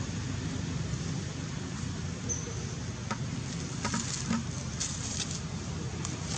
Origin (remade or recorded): recorded